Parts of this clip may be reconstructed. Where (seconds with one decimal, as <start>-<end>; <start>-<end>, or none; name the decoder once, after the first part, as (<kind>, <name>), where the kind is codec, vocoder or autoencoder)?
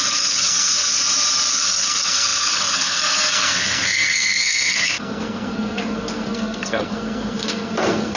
0.0-0.9 (codec, SNAC); 1.5-8.2